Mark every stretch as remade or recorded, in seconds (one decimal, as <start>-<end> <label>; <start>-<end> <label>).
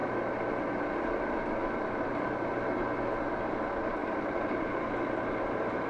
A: 0.0-4.0 recorded; 4.0-4.5 remade; 4.5-5.9 recorded